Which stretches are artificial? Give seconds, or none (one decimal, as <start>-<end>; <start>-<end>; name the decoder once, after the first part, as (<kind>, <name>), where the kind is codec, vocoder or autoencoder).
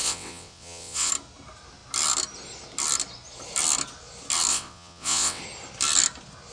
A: 0.0-1.1 (vocoder, WaveNeXt); 4.5-5.4